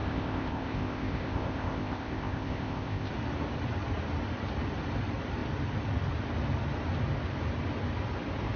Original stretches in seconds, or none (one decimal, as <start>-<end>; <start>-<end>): 3.1-8.6